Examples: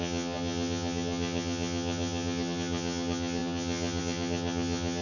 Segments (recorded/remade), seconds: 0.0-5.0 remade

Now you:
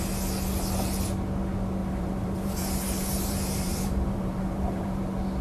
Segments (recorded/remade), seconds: 0.0-1.8 recorded; 1.8-5.0 remade; 5.0-5.4 recorded

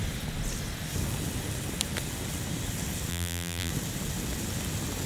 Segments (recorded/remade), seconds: 0.0-3.1 recorded; 3.1-3.7 remade; 3.7-5.1 recorded

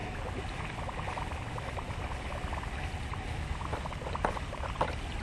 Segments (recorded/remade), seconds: 0.0-5.2 recorded